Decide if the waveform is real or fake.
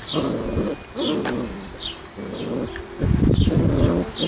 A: real